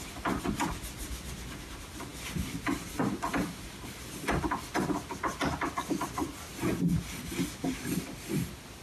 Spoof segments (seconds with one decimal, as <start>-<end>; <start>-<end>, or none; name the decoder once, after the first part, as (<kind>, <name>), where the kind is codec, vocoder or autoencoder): none